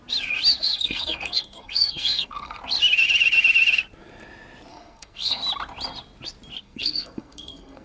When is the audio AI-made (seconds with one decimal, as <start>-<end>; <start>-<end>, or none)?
0.5-2.6; 4.7-5.4; 6.6-7.8